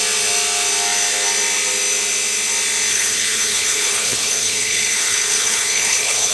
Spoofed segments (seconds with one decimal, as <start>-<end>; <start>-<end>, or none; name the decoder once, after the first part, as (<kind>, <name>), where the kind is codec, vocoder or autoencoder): 2.9-6.3 (codec, HILCodec)